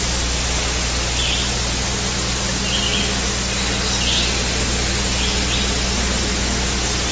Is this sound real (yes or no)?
yes